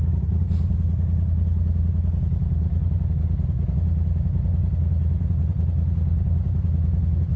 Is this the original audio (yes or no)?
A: yes